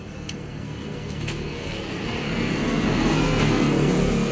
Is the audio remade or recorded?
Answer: remade